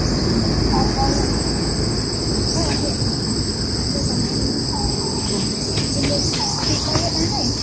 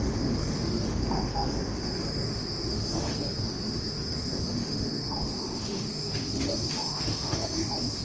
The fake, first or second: second